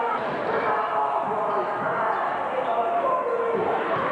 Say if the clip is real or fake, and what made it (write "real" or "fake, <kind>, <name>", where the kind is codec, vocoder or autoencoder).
real